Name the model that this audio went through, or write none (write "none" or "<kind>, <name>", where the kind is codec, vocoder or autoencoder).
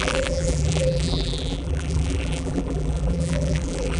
vocoder, BigVGAN v2